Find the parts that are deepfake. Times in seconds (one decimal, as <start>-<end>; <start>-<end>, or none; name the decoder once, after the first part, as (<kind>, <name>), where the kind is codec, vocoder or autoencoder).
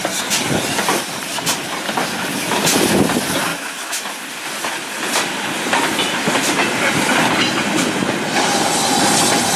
3.5-4.1 (autoencoder, DAC-VAE)